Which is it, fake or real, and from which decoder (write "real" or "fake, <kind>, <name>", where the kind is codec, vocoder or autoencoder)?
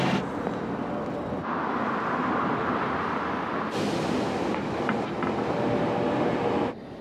real